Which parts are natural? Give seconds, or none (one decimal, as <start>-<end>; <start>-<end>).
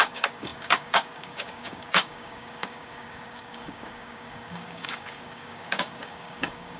none